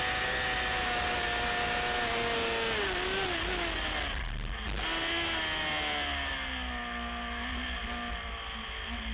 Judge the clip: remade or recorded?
recorded